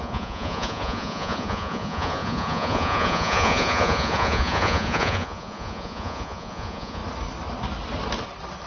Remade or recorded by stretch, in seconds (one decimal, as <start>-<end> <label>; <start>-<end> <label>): 0.0-7.0 remade; 7.0-8.7 recorded